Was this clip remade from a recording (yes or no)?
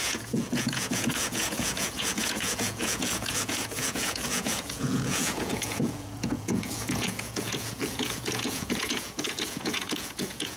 yes